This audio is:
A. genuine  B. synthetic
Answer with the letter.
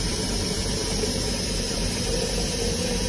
B